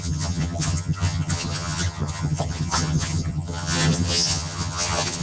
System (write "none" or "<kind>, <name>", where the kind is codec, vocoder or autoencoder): vocoder, HiFi-GAN